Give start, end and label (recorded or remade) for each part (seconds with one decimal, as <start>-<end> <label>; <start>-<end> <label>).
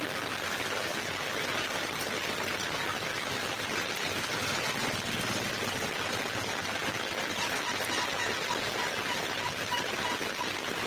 0.0-2.9 recorded; 2.9-3.5 remade; 3.5-10.9 recorded